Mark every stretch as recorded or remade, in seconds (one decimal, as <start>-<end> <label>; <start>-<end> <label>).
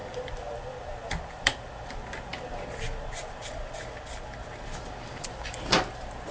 0.0-1.9 remade; 1.9-2.3 recorded; 2.3-6.3 remade